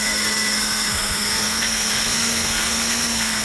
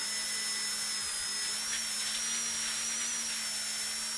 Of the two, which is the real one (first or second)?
second